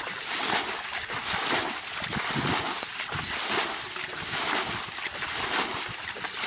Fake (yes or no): no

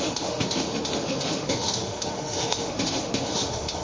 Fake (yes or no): yes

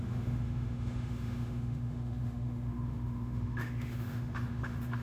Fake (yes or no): yes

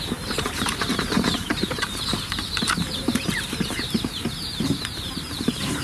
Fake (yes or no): yes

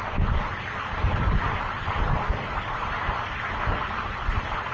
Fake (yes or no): no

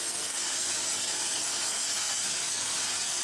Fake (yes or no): yes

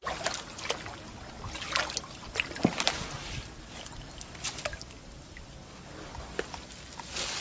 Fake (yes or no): no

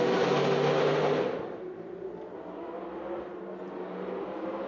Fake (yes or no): no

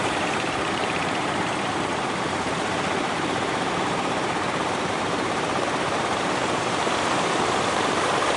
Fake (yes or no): yes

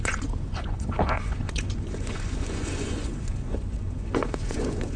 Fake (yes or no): yes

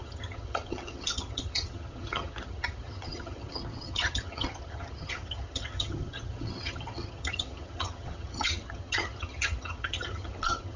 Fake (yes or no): yes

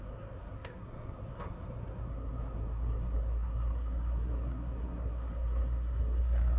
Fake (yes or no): yes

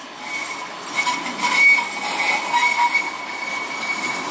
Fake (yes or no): no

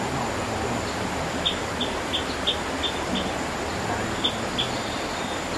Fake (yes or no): no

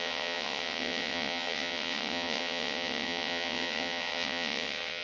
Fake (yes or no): yes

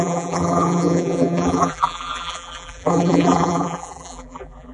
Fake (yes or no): yes